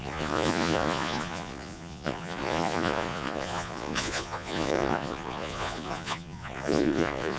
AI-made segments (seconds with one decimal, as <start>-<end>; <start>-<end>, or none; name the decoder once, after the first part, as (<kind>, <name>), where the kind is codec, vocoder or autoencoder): 0.0-7.4 (vocoder, Vocos)